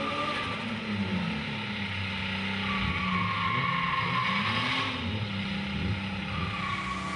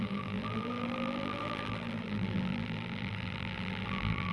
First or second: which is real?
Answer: first